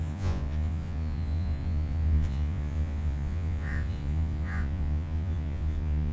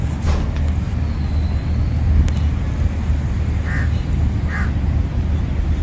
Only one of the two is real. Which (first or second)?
second